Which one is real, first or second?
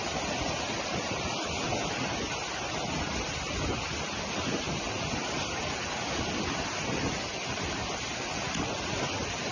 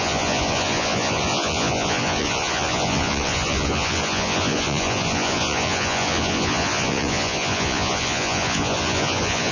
first